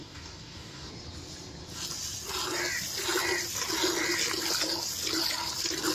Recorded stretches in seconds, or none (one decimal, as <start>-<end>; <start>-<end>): 0.9-5.9